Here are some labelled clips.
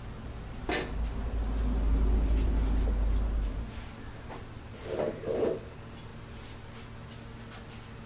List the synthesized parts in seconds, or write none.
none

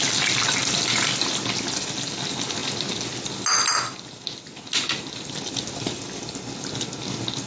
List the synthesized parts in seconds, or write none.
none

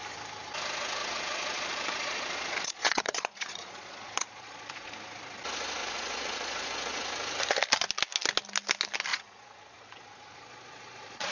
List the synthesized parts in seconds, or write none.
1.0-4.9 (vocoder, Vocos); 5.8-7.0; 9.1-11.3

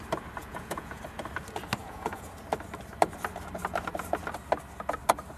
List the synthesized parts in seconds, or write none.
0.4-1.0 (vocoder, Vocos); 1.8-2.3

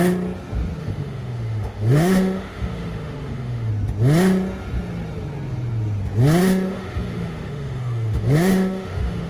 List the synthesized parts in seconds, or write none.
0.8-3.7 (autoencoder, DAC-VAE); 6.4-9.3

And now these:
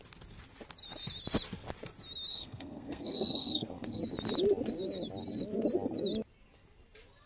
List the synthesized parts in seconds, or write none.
2.3-4.0 (codec, SNAC)

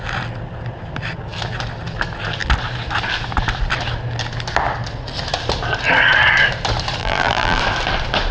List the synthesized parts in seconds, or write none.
7.0-7.6 (vocoder, BigVGAN v2)